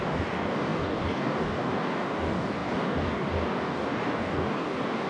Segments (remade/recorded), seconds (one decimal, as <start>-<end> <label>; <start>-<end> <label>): 0.0-5.1 remade